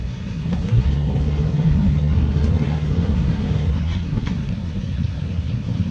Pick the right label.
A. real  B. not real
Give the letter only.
B